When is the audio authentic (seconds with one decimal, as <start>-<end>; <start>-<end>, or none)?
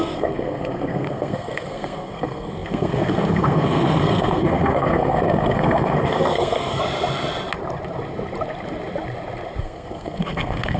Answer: 6.8-9.6